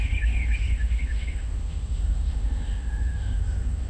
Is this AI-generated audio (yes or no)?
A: yes